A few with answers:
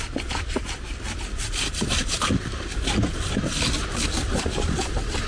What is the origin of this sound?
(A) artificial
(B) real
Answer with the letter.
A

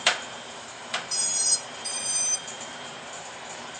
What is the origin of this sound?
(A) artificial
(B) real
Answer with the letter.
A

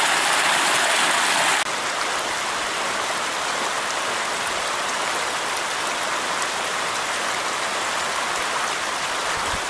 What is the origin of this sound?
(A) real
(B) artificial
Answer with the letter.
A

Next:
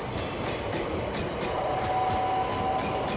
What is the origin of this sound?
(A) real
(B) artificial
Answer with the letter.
A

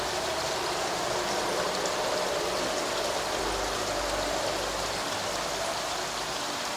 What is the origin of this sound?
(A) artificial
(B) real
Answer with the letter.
B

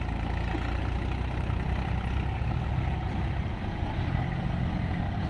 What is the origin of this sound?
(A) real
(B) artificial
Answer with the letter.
A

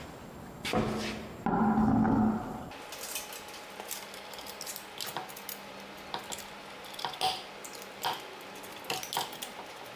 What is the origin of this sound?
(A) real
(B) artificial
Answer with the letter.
A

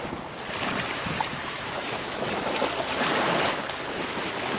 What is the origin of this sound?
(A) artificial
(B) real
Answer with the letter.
B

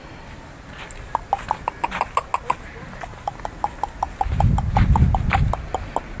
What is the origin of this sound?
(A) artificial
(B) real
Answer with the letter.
B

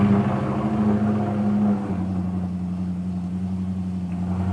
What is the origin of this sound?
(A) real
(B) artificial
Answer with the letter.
A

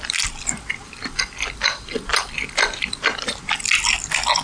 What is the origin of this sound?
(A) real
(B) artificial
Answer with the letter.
A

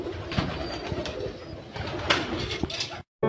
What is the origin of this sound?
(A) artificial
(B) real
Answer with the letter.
B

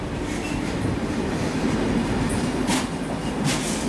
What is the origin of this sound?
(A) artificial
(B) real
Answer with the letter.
B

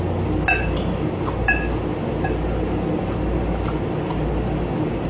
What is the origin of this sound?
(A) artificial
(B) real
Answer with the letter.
B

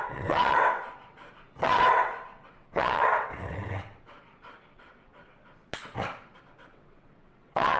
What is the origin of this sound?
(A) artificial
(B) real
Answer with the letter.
A